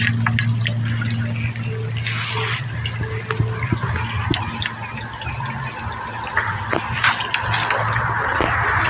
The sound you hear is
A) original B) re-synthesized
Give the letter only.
A